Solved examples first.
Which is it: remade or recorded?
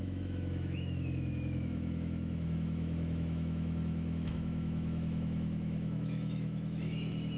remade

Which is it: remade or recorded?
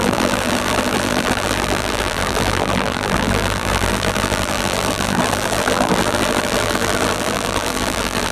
remade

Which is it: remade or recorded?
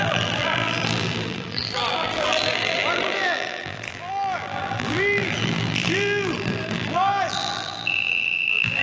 remade